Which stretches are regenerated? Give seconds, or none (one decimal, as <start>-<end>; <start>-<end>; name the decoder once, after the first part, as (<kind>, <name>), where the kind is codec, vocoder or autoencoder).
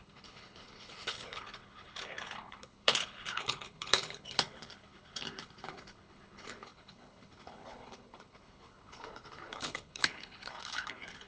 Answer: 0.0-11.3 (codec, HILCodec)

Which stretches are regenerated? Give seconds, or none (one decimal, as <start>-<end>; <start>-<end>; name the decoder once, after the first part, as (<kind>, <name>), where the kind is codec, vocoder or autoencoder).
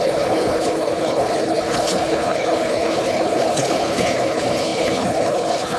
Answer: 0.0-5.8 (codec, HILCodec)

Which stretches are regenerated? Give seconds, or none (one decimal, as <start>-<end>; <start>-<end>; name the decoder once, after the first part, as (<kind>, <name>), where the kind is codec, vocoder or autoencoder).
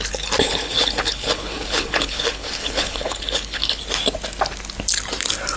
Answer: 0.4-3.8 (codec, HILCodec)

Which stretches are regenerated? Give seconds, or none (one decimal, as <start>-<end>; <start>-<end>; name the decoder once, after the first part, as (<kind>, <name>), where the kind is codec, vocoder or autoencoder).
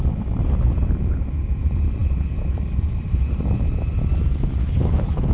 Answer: 4.6-5.3 (codec, HILCodec)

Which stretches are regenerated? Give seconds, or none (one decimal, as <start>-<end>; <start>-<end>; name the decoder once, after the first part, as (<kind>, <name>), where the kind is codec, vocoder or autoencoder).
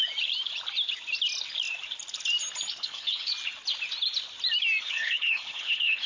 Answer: 2.8-3.3 (codec, HILCodec); 4.8-6.1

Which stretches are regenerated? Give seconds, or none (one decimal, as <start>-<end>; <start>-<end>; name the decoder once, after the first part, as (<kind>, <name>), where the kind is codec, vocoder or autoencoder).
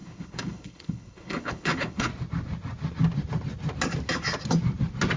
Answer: 0.0-2.1 (codec, HILCodec)